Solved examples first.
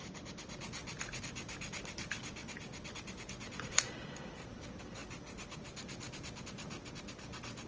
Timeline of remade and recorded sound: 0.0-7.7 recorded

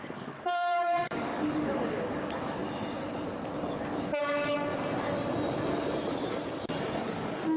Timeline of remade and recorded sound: 0.0-2.6 remade; 2.6-4.2 recorded; 4.2-4.8 remade; 4.8-7.0 recorded; 7.0-7.6 remade

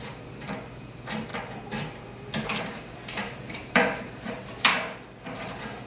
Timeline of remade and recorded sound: 0.0-1.3 remade; 1.3-2.6 recorded; 2.6-4.7 remade; 4.7-5.3 recorded; 5.3-5.9 remade

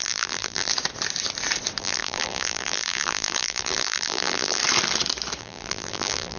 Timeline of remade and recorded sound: 0.0-0.7 remade; 0.7-1.8 recorded; 1.8-4.6 remade; 4.6-5.4 recorded; 5.4-6.4 remade

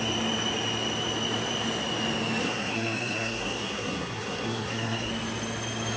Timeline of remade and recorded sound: 0.0-2.4 recorded; 2.4-5.1 remade; 5.1-6.0 recorded

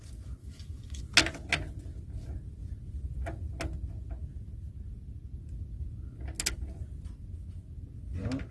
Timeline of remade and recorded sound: 0.0-0.4 recorded; 0.4-1.0 remade; 1.0-8.5 recorded